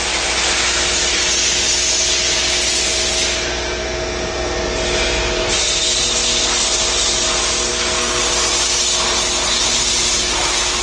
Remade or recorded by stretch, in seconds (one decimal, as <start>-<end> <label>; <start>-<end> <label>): 0.0-7.7 recorded; 7.7-8.2 remade; 8.2-10.8 recorded